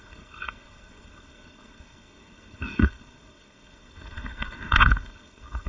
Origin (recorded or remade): remade